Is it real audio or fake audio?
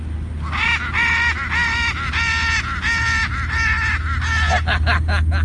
real